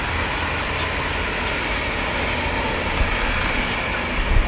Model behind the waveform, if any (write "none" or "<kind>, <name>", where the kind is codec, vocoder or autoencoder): none